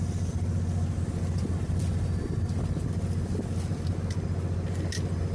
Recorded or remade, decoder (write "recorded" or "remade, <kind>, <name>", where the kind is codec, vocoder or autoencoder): recorded